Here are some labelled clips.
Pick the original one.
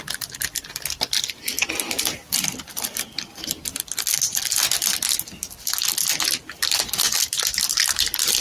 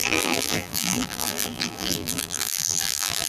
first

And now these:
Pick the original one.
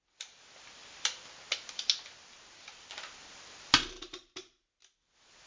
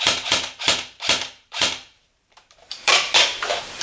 first